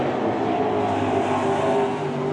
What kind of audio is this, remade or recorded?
recorded